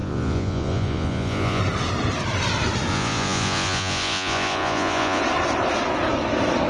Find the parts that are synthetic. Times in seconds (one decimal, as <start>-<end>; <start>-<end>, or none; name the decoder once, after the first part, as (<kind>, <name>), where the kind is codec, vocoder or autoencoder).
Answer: 0.0-1.6 (vocoder, Vocos); 2.9-5.2